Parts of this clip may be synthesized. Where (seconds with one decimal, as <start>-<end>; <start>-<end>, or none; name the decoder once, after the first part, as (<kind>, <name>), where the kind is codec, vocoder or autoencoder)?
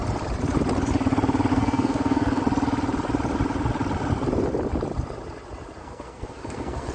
1.5-2.4 (codec, SNAC); 5.8-6.9